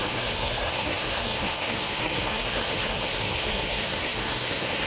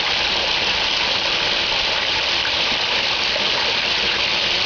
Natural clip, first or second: second